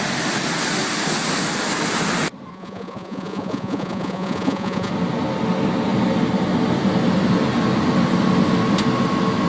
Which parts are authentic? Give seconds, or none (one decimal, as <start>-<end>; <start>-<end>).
0.0-2.5; 4.9-9.5